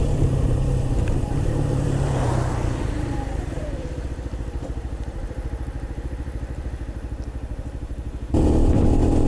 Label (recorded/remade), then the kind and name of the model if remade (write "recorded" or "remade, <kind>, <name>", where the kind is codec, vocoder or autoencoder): remade, vocoder, BigVGAN v2